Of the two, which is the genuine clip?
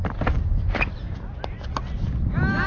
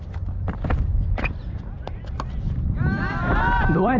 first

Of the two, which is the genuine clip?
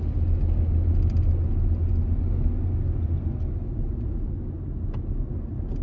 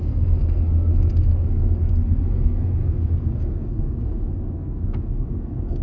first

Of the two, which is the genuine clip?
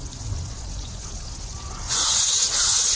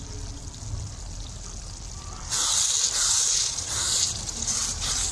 second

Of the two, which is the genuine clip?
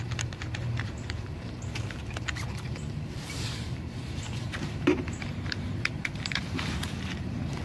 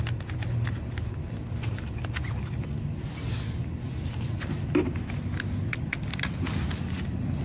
second